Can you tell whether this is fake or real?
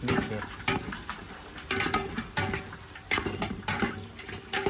real